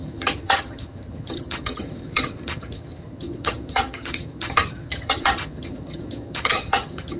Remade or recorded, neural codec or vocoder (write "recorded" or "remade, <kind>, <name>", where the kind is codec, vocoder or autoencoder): remade, vocoder, HiFi-GAN